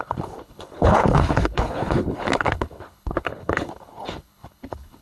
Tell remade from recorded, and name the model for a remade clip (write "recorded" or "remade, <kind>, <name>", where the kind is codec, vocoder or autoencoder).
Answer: remade, codec, HILCodec